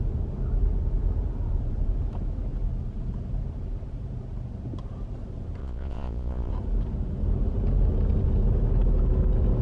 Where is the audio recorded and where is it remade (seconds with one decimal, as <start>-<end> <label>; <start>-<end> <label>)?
0.0-5.6 recorded; 5.6-6.5 remade; 6.5-9.6 recorded

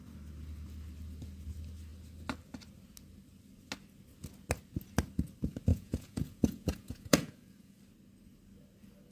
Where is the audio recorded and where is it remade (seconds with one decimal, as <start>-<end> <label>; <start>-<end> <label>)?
0.0-5.7 recorded; 5.7-7.8 remade; 7.8-9.1 recorded

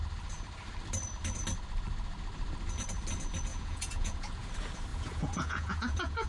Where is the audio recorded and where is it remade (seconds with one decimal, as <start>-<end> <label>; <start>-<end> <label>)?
0.0-3.5 recorded; 3.5-4.5 remade; 4.5-4.9 recorded; 4.9-6.3 remade

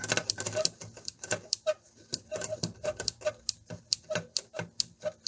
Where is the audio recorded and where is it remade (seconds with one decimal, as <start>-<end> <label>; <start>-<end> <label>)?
0.0-5.3 recorded